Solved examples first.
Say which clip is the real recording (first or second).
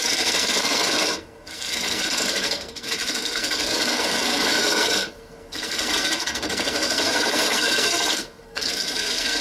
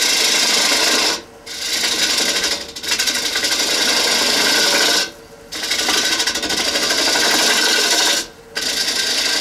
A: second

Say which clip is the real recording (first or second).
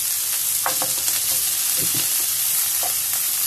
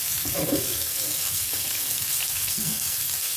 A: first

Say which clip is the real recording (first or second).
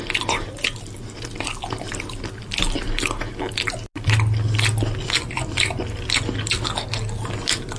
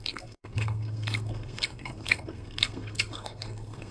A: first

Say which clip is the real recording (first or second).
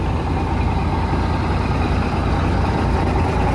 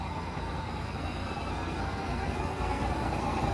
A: first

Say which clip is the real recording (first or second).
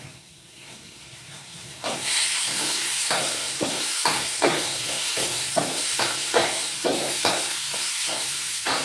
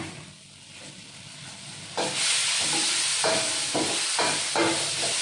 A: second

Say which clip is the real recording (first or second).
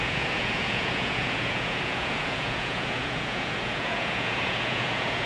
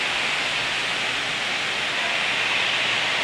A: second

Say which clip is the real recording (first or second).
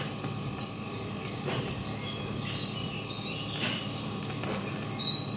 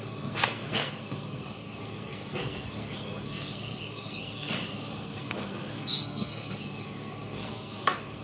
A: first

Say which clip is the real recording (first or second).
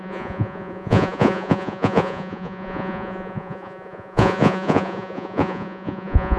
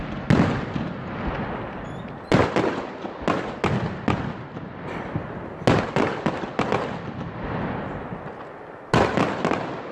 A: second